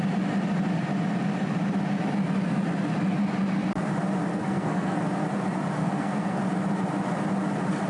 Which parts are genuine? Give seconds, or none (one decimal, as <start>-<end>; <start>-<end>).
0.0-4.3; 5.0-5.8; 6.4-7.9